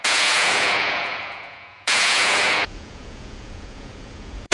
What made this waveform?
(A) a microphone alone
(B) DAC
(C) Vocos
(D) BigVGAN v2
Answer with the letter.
C